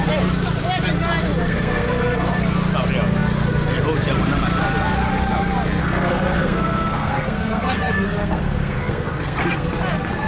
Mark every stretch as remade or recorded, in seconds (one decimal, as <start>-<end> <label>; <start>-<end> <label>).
0.0-1.4 recorded; 1.4-2.3 remade; 2.3-5.8 recorded; 5.8-9.7 remade; 9.7-10.3 recorded